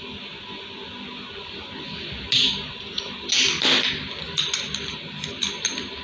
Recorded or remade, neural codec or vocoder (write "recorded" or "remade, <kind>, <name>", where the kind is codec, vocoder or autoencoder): recorded